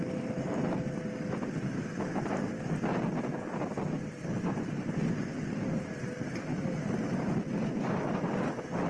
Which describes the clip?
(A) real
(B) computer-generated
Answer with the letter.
A